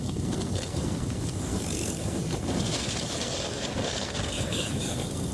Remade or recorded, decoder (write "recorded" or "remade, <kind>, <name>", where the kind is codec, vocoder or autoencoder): remade, codec, SNAC